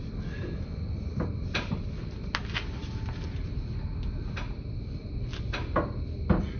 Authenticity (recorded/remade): recorded